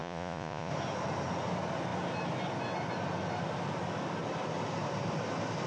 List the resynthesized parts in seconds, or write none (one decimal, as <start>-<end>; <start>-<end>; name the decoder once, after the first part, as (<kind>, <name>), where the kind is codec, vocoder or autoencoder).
0.0-0.7 (vocoder, Vocos)